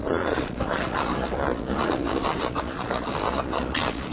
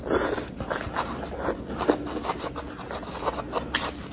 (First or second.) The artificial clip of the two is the first